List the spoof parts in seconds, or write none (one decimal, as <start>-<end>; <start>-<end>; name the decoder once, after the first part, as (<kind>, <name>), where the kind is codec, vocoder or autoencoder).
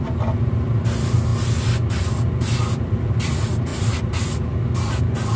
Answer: none